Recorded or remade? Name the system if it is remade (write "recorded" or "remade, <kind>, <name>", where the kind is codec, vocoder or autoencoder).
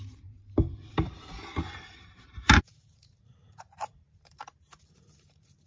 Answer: remade, vocoder, BigVGAN v2